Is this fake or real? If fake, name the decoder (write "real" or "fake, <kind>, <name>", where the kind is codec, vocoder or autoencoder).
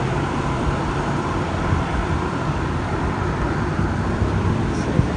fake, vocoder, BigVGAN v2